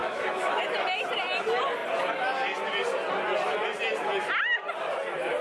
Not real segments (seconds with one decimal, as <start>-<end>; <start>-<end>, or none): 0.0-0.6